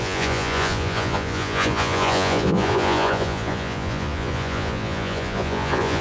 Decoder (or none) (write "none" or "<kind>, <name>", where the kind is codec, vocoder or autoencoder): vocoder, Vocos